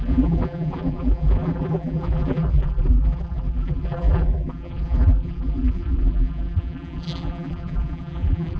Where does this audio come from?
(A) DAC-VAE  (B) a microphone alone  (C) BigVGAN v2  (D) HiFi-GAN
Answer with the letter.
C